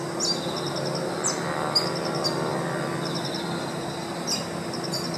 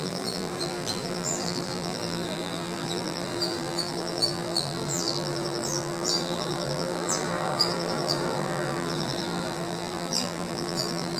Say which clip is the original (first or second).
first